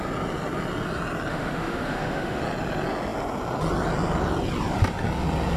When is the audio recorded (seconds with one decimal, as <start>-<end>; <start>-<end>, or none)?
0.0-1.3; 2.4-5.6